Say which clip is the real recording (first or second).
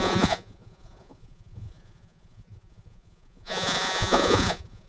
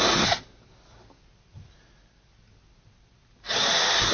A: second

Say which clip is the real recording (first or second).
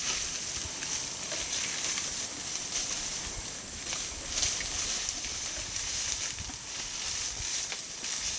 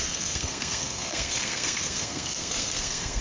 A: first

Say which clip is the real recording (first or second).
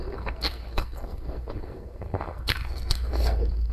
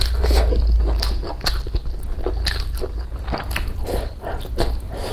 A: second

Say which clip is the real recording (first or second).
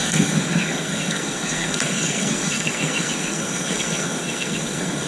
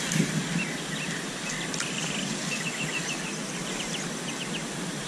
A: second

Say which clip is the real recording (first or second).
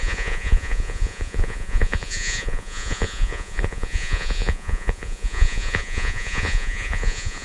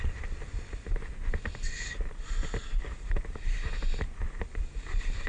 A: second